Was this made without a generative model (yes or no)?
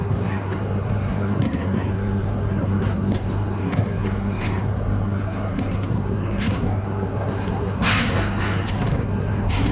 no